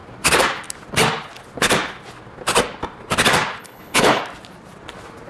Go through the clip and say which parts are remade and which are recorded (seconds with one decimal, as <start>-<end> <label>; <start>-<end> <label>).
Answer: 0.0-3.6 recorded; 3.6-4.2 remade; 4.2-5.3 recorded